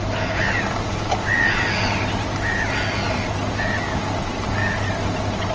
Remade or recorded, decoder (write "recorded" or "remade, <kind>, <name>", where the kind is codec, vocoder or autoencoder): recorded